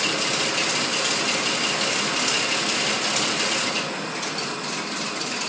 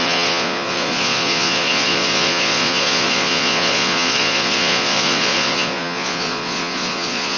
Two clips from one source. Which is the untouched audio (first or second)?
first